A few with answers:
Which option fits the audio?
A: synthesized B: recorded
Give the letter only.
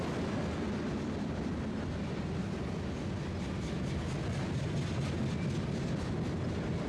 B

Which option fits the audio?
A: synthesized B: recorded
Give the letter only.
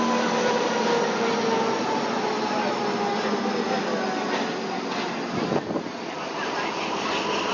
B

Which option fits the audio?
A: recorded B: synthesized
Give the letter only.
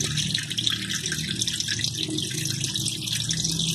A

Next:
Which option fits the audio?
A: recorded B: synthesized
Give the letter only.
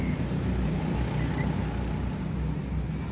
A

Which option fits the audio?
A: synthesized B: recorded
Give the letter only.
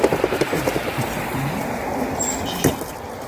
B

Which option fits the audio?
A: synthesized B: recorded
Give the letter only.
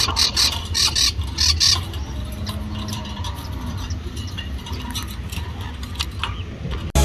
B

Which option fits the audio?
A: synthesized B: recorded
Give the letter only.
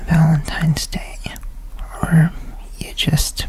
A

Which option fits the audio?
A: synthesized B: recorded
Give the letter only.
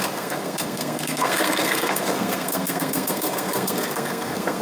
A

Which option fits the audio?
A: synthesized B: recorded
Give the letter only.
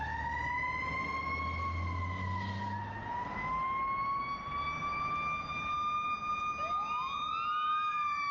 B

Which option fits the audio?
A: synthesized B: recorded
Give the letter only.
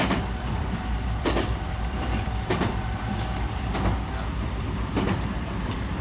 A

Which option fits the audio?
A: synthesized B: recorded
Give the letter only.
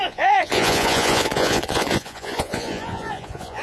A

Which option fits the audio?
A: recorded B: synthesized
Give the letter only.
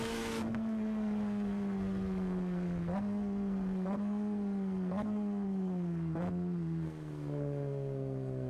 B